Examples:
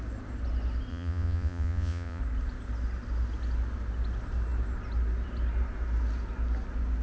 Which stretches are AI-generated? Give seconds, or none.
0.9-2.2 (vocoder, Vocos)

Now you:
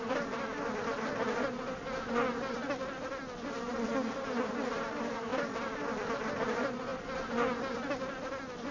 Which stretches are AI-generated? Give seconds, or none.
none

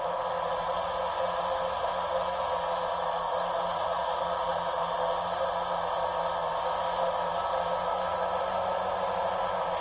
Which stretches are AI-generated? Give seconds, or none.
3.7-4.5 (vocoder, Vocos)

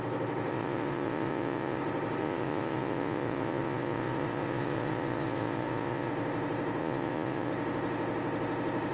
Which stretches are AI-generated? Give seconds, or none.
0.5-1.8 (vocoder, Vocos); 2.2-6.1; 6.8-7.5